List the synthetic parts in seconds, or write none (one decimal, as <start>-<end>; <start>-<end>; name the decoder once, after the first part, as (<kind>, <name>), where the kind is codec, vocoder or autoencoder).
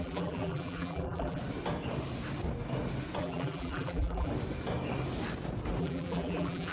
0.0-1.4 (vocoder, BigVGAN v2); 3.2-4.3; 5.8-6.7